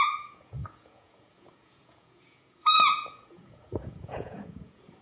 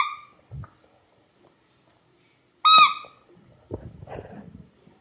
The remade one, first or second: first